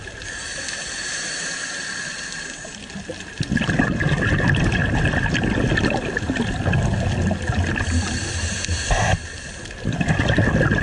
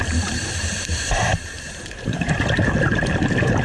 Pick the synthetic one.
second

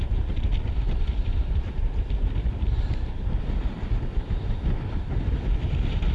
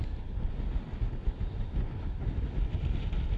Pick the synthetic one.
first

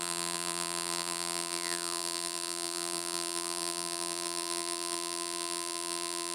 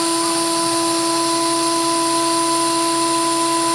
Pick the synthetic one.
first